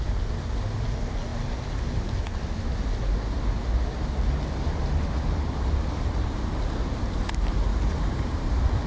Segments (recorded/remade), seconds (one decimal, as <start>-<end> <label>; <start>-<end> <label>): 0.0-7.7 recorded; 7.7-8.5 remade; 8.5-8.9 recorded